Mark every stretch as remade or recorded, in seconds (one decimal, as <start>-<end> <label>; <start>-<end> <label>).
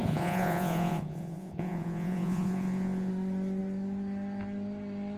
0.0-3.1 remade; 3.1-5.2 recorded